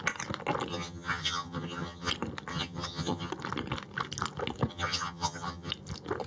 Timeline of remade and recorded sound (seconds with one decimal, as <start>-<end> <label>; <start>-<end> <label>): 0.0-0.7 recorded; 0.7-2.1 remade; 2.1-2.5 recorded; 2.5-3.3 remade; 3.3-4.7 recorded; 4.7-5.7 remade; 5.7-6.3 recorded